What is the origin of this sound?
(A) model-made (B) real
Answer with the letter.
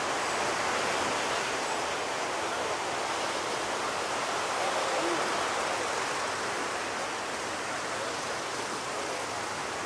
B